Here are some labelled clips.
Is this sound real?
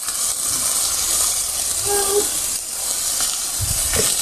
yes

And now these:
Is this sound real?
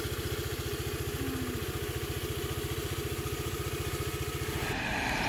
yes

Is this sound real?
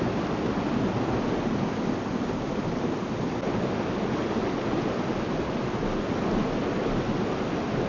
yes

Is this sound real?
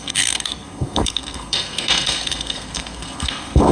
no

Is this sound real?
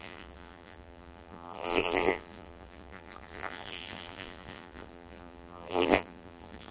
no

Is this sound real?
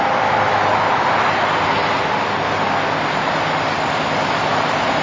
yes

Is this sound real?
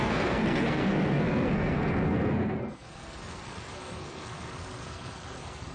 no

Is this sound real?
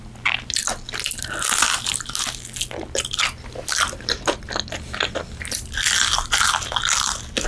yes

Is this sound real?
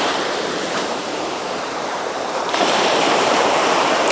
no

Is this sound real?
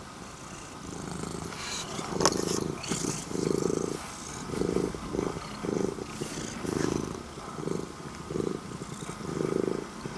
yes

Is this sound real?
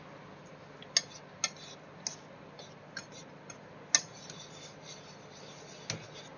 yes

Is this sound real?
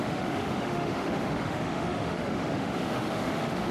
no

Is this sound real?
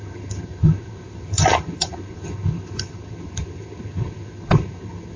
no